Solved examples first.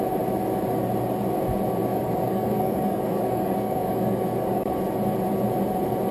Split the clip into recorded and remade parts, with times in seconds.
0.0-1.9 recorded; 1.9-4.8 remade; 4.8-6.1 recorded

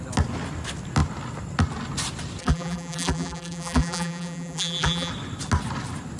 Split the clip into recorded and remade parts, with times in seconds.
0.0-2.4 recorded; 2.4-5.1 remade; 5.1-6.2 recorded